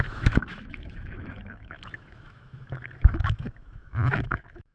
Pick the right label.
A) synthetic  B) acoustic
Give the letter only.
A